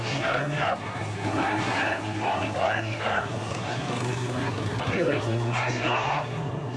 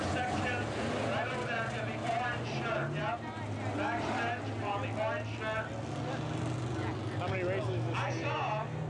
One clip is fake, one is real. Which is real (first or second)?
second